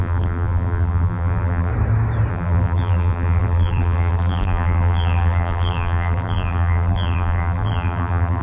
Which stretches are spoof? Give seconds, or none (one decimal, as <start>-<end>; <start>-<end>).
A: 0.0-1.7; 2.3-8.4